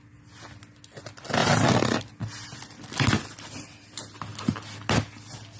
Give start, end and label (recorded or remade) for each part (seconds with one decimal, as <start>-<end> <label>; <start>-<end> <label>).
0.0-5.6 recorded